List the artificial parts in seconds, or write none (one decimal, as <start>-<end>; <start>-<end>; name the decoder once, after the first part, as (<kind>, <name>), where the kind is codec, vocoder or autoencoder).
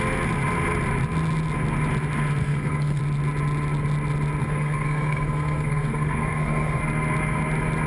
2.4-3.0 (codec, SNAC); 4.4-6.8